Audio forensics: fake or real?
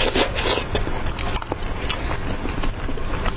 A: real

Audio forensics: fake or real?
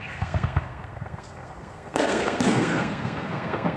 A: fake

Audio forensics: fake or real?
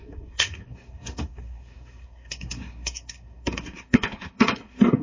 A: fake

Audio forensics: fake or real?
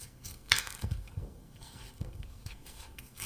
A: fake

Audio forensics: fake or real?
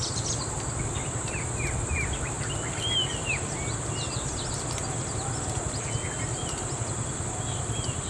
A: real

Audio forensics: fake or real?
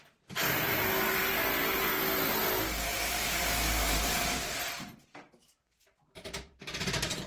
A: real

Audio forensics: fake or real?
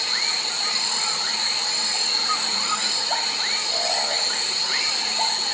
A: real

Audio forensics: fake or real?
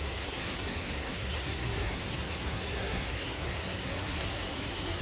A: fake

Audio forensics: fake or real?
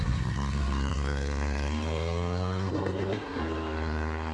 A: fake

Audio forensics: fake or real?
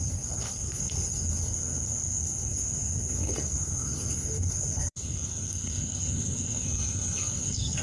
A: fake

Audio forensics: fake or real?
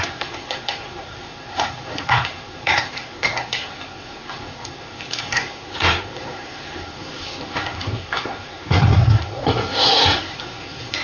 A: fake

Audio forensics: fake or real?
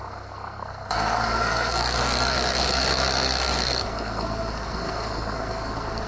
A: fake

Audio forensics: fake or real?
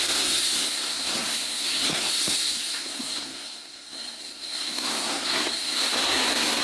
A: fake